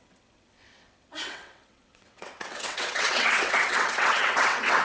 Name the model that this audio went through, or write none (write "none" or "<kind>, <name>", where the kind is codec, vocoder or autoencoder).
vocoder, WaveNeXt